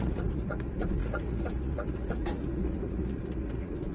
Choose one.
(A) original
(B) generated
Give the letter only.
B